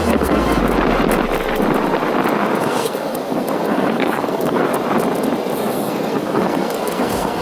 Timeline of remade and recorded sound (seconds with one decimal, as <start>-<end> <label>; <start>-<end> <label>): 0.0-0.6 remade; 0.6-2.6 recorded; 2.6-4.7 remade; 4.7-5.7 recorded; 5.7-7.4 remade